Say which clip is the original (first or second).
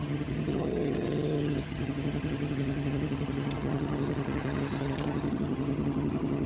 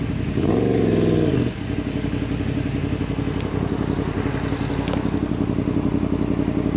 second